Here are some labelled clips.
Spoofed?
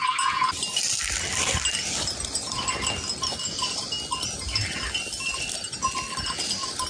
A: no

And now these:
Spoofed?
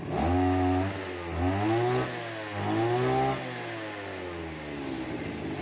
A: no